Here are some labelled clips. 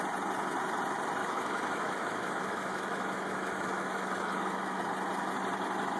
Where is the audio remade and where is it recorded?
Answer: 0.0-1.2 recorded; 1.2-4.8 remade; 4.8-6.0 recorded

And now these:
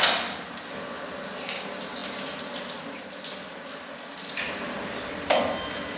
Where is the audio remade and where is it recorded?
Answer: 0.0-6.0 recorded